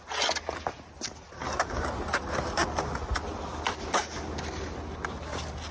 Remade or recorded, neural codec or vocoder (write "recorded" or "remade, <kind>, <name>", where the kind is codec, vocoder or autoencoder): recorded